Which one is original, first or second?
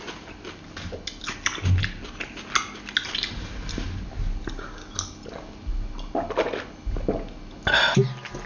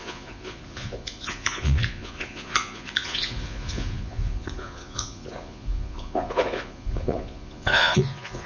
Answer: first